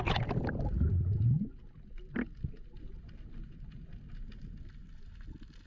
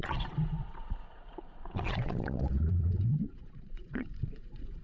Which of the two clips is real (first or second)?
first